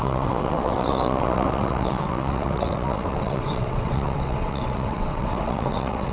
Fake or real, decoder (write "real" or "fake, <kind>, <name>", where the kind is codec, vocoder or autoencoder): fake, vocoder, WaveNeXt